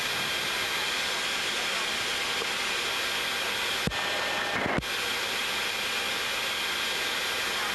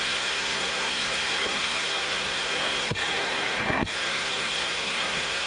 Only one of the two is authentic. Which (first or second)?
first